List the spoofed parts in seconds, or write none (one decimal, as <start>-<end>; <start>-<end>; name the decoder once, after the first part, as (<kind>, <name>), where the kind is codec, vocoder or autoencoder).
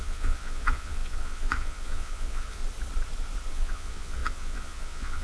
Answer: 0.0-2.6 (vocoder, Vocos); 3.5-5.2